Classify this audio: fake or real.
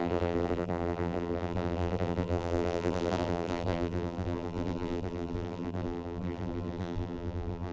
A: fake